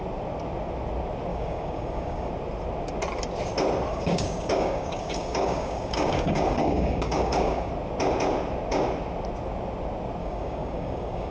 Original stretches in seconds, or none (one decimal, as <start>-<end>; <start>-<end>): 0.0-1.3; 2.3-3.9; 7.7-10.2